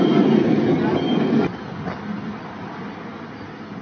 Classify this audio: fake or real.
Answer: real